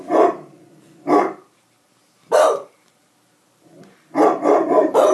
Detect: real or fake fake